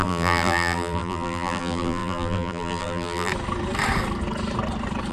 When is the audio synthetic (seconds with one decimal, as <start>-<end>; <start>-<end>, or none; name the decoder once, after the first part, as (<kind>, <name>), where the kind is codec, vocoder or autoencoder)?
0.0-3.3 (vocoder, BigVGAN v2)